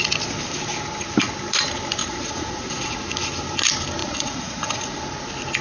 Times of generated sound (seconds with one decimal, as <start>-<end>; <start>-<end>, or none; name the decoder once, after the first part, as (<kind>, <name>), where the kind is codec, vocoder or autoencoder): 2.0-3.0 (vocoder, Vocos); 4.0-5.0